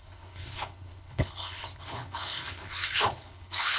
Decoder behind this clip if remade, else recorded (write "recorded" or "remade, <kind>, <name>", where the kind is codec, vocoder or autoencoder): remade, codec, HILCodec